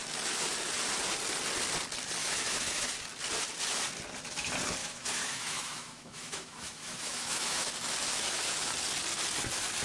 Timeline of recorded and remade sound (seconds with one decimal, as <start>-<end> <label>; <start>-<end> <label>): 0.0-2.2 recorded; 2.2-2.9 remade; 2.9-4.8 recorded; 4.8-7.7 remade; 7.7-9.8 recorded